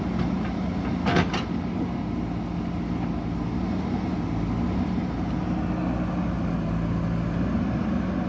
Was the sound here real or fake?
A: real